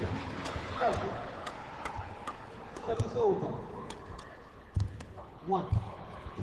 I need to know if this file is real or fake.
fake